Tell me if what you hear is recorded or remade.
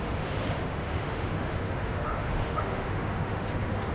remade